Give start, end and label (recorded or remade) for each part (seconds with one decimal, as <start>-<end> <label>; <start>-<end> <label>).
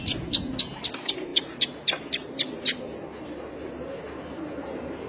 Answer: 0.0-5.1 recorded